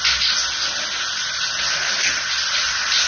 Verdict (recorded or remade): recorded